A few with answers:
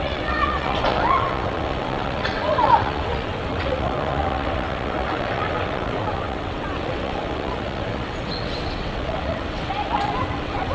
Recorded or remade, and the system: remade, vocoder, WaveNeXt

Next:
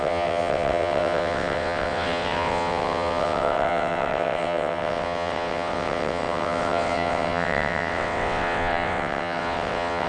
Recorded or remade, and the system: remade, vocoder, WaveNeXt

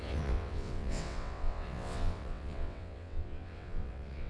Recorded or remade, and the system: remade, vocoder, WaveNeXt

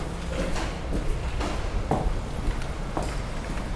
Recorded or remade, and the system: recorded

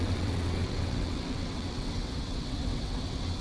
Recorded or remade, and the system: remade, vocoder, WaveNeXt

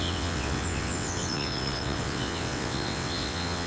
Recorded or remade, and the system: remade, vocoder, WaveNeXt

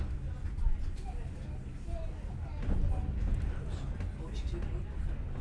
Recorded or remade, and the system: recorded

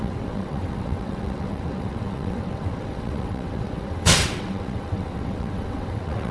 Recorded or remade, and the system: remade, vocoder, WaveNeXt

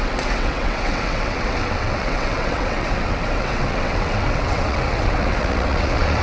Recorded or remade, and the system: remade, vocoder, WaveNeXt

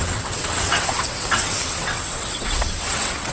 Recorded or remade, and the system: remade, vocoder, WaveNeXt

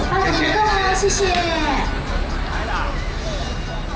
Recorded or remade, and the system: recorded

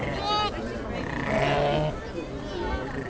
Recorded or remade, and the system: recorded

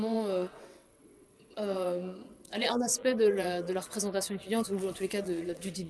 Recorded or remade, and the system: remade, vocoder, WaveNeXt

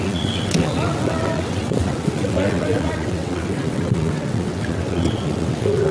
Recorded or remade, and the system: remade, vocoder, WaveNeXt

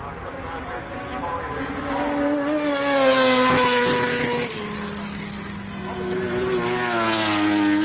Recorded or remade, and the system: recorded